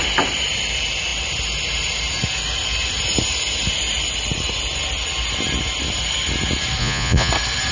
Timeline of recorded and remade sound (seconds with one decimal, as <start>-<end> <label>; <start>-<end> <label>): 0.0-6.8 recorded; 6.8-7.3 remade; 7.3-7.7 recorded